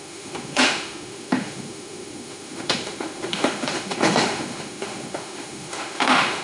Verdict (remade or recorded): remade